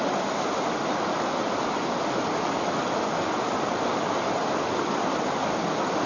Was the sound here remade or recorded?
recorded